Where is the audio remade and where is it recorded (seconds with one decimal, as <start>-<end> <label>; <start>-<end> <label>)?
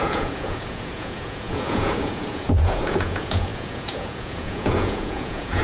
0.0-5.6 remade